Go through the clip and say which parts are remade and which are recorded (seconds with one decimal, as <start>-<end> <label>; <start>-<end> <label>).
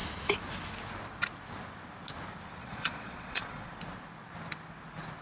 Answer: 0.0-2.6 recorded; 2.6-3.7 remade; 3.7-5.2 recorded